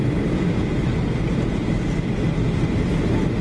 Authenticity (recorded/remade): recorded